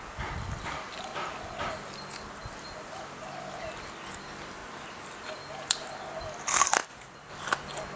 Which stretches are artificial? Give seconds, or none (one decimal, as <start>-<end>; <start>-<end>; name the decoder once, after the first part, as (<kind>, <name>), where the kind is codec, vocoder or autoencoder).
6.8-7.3 (vocoder, Vocos)